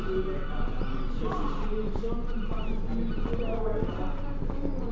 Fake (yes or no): no